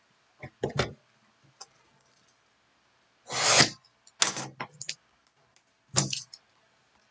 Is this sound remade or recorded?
recorded